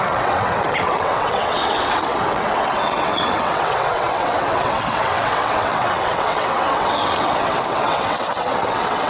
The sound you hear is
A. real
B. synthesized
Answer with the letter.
B